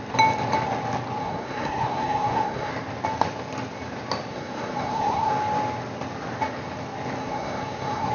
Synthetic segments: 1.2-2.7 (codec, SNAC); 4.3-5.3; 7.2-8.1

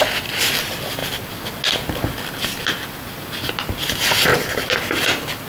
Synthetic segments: 4.3-5.5 (vocoder, BigVGAN v2)

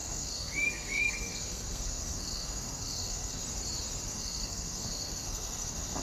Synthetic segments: 0.0-3.4 (codec, SNAC); 4.1-6.0